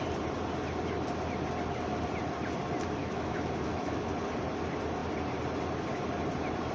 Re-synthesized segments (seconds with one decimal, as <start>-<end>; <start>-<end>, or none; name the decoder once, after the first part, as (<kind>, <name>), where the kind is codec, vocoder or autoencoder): 3.0-4.1 (autoencoder, DAC-VAE)